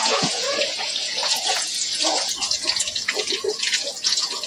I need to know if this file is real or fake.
fake